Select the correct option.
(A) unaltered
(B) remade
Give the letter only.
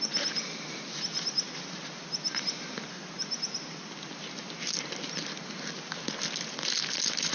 A